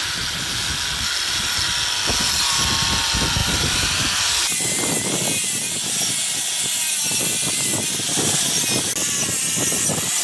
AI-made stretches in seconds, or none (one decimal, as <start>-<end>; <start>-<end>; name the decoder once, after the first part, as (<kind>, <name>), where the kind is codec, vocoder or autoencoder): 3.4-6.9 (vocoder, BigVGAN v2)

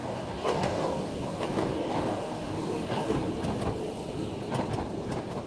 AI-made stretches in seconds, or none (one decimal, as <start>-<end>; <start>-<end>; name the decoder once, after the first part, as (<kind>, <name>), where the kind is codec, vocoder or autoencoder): 0.0-3.3 (codec, DAC)

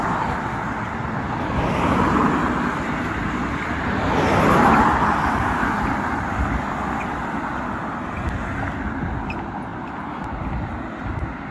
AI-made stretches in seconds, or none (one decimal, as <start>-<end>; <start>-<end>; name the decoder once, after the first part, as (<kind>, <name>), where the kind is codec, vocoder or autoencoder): none